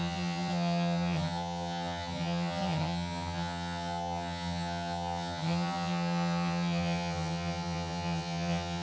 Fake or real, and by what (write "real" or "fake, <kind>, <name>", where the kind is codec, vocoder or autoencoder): fake, vocoder, HiFi-GAN